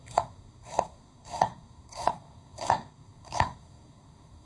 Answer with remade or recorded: remade